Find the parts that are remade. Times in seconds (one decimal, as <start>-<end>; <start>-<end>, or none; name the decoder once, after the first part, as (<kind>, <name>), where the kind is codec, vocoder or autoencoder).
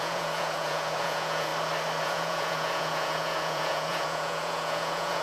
0.0-1.5 (vocoder, Vocos); 2.0-5.2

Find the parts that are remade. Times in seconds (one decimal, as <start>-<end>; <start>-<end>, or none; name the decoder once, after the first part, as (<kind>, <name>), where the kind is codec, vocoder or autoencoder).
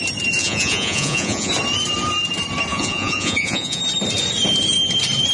0.4-1.5 (vocoder, Vocos); 2.7-3.8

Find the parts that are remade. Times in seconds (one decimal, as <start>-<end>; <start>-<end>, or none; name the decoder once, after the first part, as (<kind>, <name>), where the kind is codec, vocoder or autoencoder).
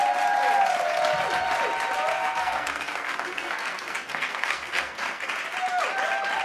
2.1-5.3 (codec, SNAC)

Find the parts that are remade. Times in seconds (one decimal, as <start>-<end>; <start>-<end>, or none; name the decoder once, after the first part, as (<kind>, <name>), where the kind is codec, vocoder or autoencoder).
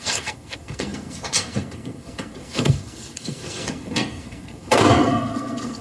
0.0-5.8 (codec, SNAC)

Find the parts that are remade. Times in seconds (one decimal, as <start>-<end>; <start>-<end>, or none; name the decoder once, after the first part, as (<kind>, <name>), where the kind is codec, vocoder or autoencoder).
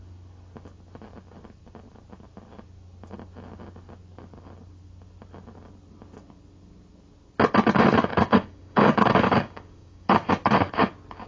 8.1-10.3 (codec, DAC)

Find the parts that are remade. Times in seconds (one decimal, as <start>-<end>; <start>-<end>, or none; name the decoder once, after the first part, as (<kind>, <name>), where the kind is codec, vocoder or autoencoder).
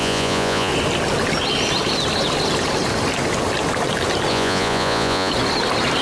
0.0-0.7 (vocoder, Vocos); 4.3-5.3